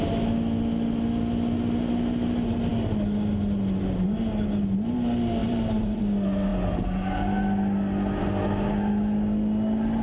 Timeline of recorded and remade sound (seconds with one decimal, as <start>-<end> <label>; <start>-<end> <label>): 0.0-5.4 recorded; 5.4-6.0 remade; 6.0-10.0 recorded

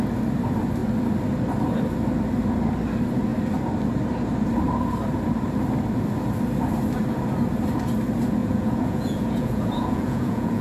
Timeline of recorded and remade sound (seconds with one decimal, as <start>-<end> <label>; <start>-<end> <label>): 0.0-8.4 recorded; 8.4-10.6 remade

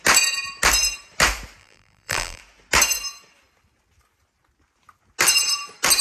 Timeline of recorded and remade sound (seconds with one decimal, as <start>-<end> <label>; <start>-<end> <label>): 0.0-1.6 recorded; 1.6-2.4 remade; 2.4-6.0 recorded